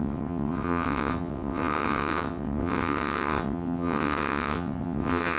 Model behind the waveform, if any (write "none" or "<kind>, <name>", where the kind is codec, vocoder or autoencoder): vocoder, WaveNeXt